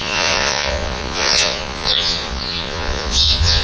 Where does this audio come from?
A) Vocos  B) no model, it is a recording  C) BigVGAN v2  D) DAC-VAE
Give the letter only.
A